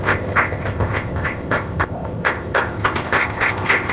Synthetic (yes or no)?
yes